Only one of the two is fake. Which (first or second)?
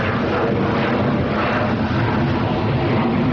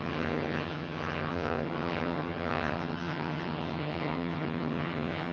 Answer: second